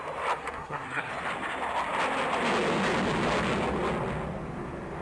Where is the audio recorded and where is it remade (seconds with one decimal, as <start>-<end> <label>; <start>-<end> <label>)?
0.0-0.4 recorded; 0.4-1.1 remade; 1.1-5.0 recorded